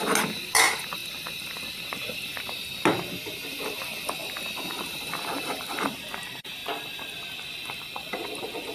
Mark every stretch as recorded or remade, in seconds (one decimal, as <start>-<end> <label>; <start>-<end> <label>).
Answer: 0.0-8.7 recorded